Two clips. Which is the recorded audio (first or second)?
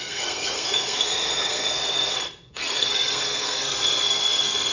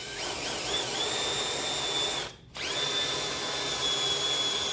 second